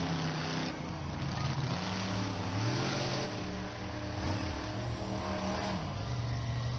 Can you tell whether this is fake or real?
real